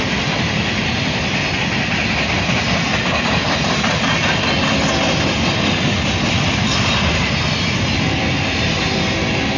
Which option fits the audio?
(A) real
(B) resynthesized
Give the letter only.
A